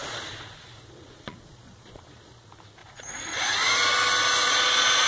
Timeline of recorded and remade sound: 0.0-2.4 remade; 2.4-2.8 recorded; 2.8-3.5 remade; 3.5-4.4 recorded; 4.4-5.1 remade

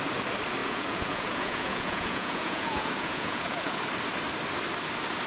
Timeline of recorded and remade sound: 0.0-0.6 recorded; 0.6-3.8 remade; 3.8-5.3 recorded